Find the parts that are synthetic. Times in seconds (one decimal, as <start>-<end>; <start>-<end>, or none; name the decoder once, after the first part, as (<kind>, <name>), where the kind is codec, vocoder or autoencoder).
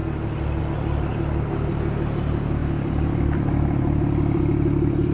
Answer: 0.6-1.1 (vocoder, BigVGAN v2); 1.7-5.1